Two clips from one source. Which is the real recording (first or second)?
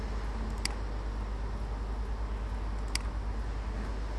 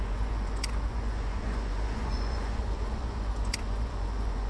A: first